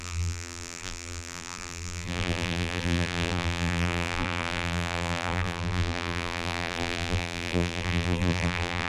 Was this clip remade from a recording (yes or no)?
yes